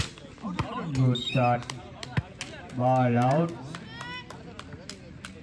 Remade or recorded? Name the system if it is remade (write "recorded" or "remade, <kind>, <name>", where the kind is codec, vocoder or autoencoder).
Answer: recorded